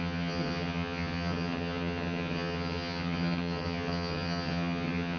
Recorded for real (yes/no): no